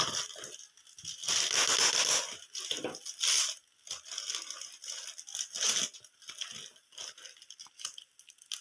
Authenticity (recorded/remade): recorded